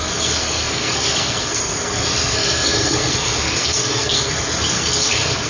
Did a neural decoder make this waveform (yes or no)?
yes